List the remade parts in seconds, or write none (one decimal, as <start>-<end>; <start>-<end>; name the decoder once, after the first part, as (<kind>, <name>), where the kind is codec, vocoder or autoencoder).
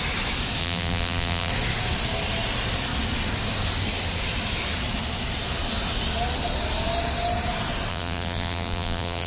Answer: 0.6-1.5 (vocoder, BigVGAN v2); 7.9-9.3